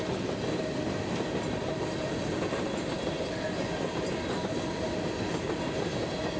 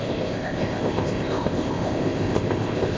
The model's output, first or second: second